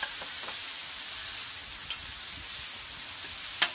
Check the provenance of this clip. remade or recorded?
recorded